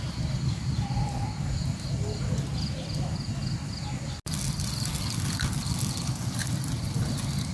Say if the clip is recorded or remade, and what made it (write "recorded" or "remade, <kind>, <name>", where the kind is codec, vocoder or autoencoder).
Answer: recorded